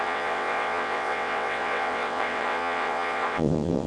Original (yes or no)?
no